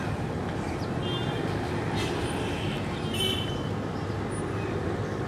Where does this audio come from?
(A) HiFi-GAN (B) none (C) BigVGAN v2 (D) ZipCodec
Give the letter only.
B